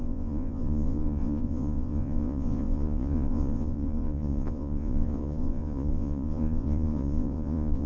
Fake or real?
fake